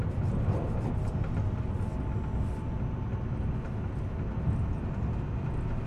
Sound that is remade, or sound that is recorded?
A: recorded